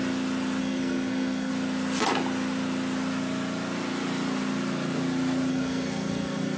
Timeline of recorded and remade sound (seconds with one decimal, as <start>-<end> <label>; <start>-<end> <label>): 0.0-0.6 recorded; 0.6-1.5 remade; 1.5-5.5 recorded; 5.5-6.6 remade